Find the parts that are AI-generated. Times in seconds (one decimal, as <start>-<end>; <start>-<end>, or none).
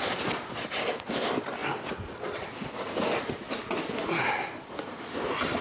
none